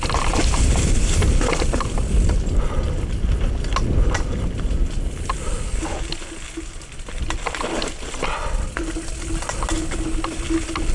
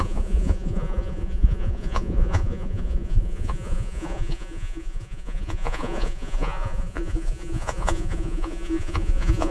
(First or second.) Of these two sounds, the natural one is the first